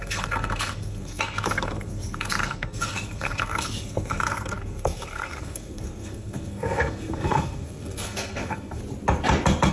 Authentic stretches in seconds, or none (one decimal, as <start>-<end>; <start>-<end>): 8.8-9.7